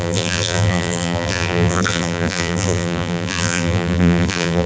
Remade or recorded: remade